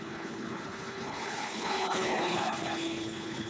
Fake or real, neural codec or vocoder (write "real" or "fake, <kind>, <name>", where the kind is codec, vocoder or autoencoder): fake, codec, HILCodec